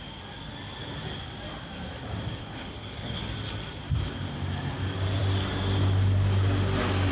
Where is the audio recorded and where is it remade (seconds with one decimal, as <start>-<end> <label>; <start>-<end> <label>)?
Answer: 0.0-2.4 recorded; 2.4-3.2 remade; 3.2-7.1 recorded